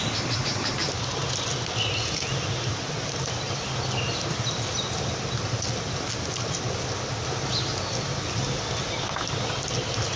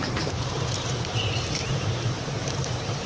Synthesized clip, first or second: second